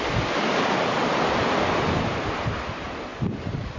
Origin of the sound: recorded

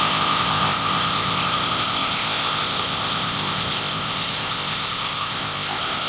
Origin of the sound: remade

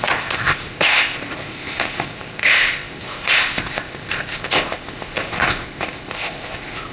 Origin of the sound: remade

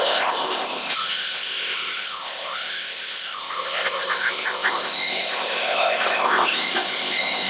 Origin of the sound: remade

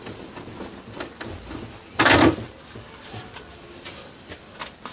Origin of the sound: recorded